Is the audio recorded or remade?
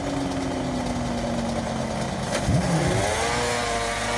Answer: recorded